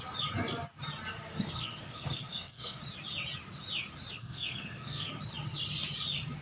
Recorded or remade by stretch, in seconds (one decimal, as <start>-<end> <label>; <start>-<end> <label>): 0.0-1.3 recorded; 1.3-2.8 remade; 2.8-4.2 recorded; 4.2-5.1 remade; 5.1-6.4 recorded